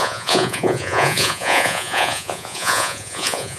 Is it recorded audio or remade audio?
remade